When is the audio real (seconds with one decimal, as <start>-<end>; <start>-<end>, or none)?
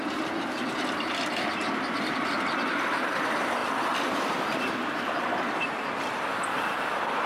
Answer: none